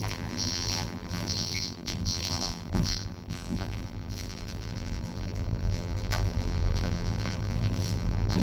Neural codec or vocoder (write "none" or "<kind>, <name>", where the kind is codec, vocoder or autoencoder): vocoder, BigVGAN v2